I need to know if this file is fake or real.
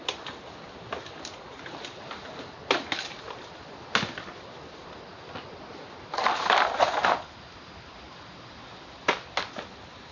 real